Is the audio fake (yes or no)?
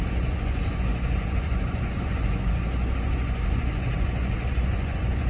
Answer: yes